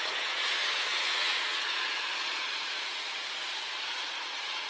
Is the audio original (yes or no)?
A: no